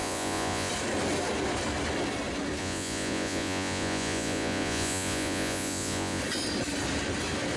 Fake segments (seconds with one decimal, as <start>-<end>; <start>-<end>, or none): 0.0-0.7; 2.6-6.2